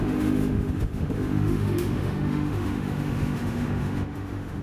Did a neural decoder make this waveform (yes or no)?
yes